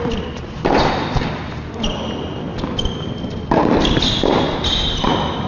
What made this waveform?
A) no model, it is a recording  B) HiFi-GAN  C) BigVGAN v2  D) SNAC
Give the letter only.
A